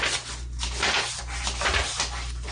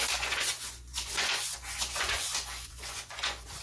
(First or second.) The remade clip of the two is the second